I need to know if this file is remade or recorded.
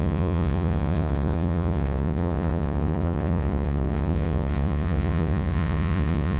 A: remade